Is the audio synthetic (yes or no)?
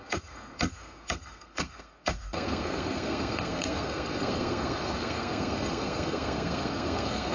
yes